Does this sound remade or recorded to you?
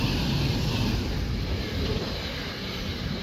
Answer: recorded